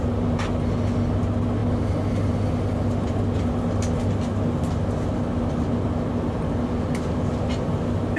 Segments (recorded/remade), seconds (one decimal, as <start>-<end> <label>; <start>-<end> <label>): 0.0-8.2 recorded